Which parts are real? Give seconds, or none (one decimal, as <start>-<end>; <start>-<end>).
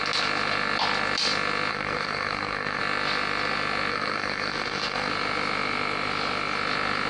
0.0-1.7; 2.8-3.9; 5.1-7.1